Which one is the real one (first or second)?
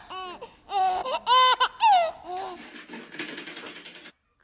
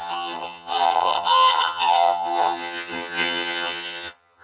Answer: first